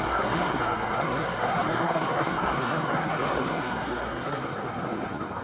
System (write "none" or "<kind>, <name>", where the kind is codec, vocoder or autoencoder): codec, SNAC